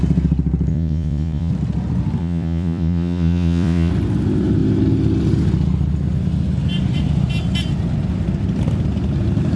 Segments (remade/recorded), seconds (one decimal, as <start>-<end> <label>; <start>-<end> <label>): 0.0-0.7 recorded; 0.7-1.5 remade; 1.5-2.2 recorded; 2.2-3.9 remade; 3.9-9.6 recorded